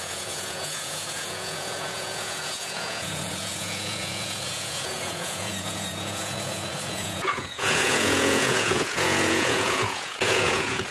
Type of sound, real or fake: fake